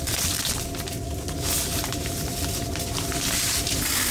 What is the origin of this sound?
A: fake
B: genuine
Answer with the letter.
B